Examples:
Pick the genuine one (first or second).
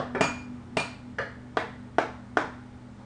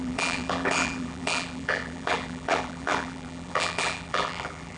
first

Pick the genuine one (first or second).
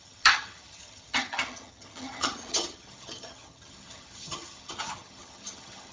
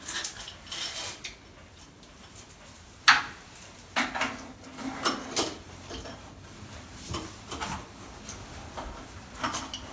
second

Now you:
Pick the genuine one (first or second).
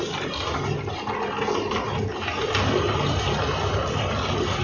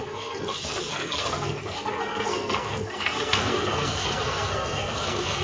first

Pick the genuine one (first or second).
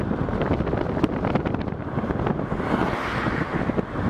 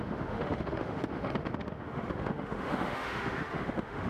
first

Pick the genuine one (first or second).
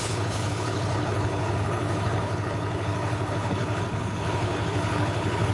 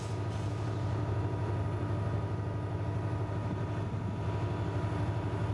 second